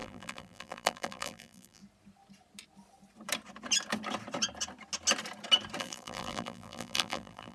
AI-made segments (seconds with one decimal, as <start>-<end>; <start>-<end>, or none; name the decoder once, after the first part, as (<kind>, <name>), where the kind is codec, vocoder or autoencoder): 0.0-1.8 (vocoder, BigVGAN v2); 5.8-7.5